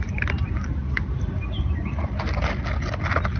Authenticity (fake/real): real